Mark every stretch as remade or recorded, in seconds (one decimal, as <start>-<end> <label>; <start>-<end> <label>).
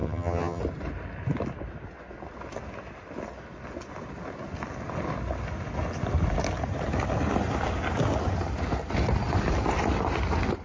0.0-0.6 remade; 0.6-10.6 recorded